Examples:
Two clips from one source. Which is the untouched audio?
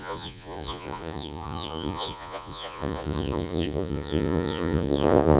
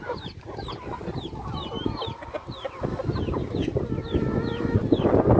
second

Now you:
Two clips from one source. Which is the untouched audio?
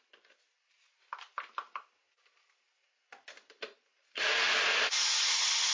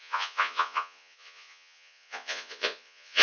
first